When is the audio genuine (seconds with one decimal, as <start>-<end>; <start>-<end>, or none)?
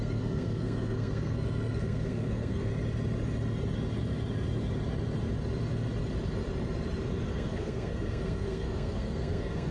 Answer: 2.7-7.3